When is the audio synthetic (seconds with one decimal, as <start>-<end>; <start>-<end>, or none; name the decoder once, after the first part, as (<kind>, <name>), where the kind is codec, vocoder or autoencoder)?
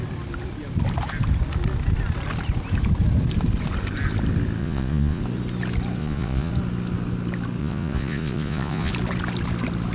4.6-5.2 (vocoder, Vocos); 6.0-6.5; 7.6-8.9